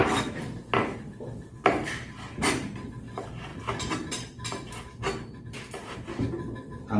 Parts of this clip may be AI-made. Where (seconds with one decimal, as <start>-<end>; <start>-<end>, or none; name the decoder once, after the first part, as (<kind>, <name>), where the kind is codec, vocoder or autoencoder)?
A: none